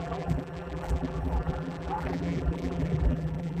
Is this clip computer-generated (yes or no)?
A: yes